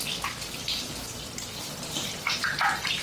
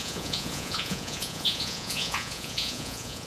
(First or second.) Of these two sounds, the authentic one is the first